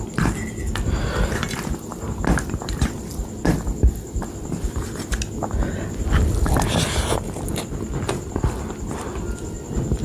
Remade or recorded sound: recorded